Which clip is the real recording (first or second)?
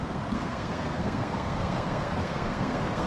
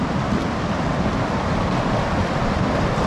second